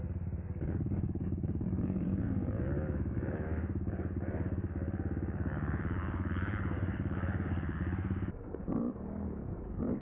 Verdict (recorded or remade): remade